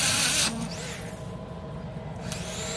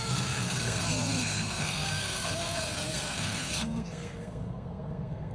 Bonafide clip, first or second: first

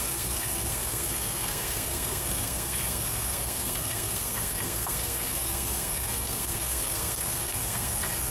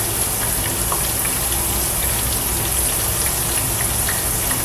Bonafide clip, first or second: second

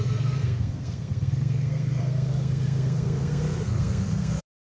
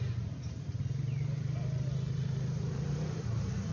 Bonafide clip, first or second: second